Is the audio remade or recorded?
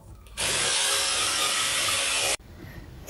remade